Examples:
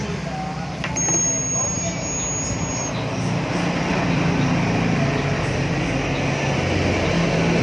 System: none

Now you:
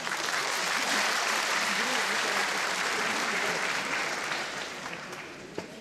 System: vocoder, BigVGAN v2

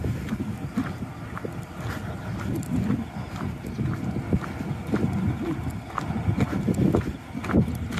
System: none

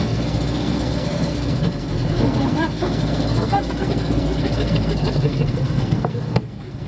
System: codec, SNAC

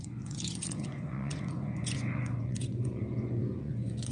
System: vocoder, Vocos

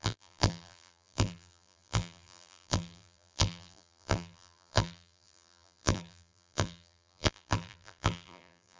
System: vocoder, BigVGAN v2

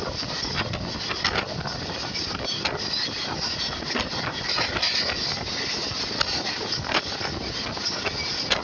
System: none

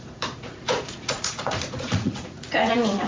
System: vocoder, Vocos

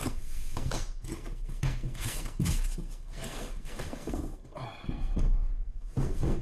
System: codec, SNAC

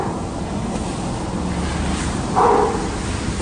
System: none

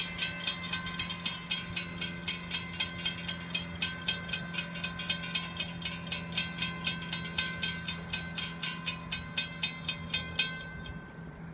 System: none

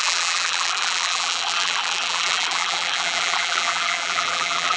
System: vocoder, BigVGAN v2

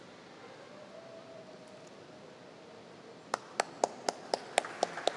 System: none